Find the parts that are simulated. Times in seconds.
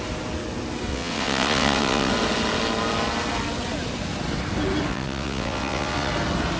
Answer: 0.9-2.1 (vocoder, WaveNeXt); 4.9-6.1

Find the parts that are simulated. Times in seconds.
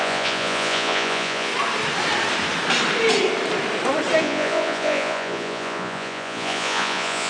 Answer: 0.0-1.5 (vocoder, Vocos); 4.2-7.3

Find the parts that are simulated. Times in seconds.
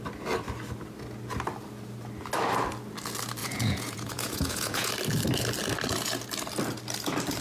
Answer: 3.4-4.9 (vocoder, Vocos)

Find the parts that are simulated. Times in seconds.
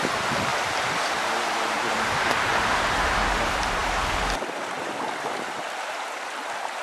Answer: 0.0-3.8 (vocoder, BigVGAN v2)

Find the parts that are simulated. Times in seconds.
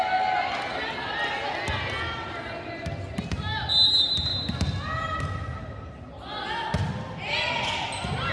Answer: none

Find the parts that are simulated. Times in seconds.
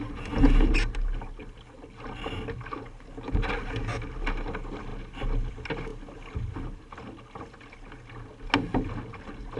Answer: none